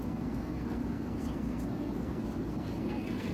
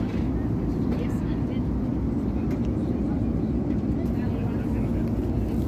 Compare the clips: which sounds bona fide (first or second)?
second